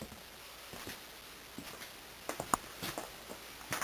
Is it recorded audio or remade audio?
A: recorded